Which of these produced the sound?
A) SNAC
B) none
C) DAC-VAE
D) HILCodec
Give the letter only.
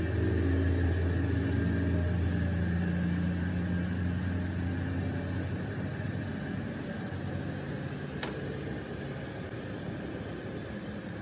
B